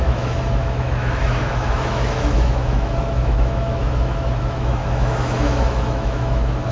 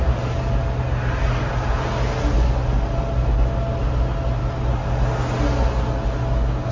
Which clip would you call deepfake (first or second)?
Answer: first